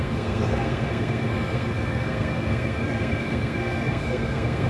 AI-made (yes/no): yes